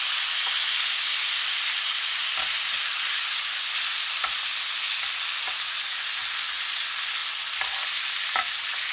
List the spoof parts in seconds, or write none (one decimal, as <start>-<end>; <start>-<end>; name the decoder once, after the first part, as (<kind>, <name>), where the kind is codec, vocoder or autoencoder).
none